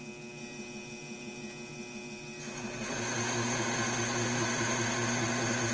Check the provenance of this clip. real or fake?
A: real